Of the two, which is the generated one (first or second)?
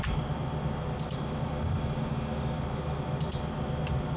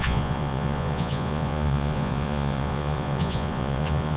second